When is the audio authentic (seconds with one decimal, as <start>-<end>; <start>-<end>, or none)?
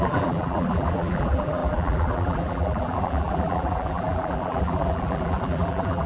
none